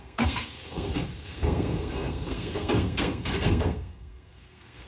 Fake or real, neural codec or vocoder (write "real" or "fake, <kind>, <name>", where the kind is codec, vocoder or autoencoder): fake, codec, SNAC